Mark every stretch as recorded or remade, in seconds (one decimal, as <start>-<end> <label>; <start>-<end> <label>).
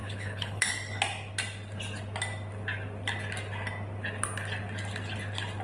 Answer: 0.0-0.7 remade; 0.7-5.6 recorded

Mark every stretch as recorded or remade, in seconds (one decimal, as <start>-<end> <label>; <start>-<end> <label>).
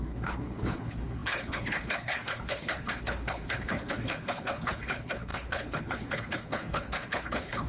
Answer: 0.0-7.7 remade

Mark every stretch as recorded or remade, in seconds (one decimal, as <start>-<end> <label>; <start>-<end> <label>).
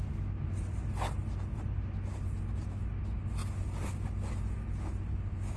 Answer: 0.0-5.6 recorded